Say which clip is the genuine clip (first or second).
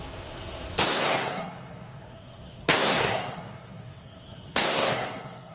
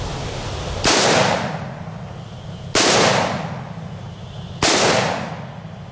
second